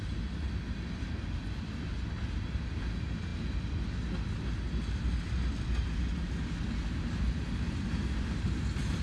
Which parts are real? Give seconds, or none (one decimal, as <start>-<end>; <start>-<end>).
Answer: 0.0-9.0